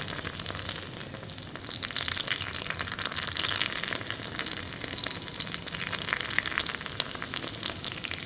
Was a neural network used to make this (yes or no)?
no